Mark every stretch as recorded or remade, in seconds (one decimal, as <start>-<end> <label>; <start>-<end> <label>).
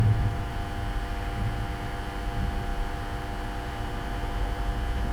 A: 0.0-0.5 remade; 0.5-5.1 recorded